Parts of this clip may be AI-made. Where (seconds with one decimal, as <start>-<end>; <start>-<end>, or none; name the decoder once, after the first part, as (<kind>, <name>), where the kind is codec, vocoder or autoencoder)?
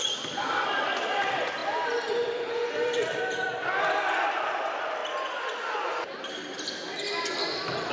0.0-5.0 (vocoder, BigVGAN v2)